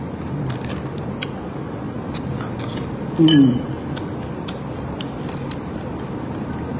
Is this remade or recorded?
recorded